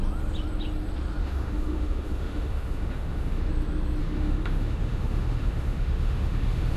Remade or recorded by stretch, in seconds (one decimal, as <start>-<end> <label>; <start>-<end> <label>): 0.0-1.2 recorded; 1.2-3.5 remade; 3.5-4.0 recorded; 4.0-6.8 remade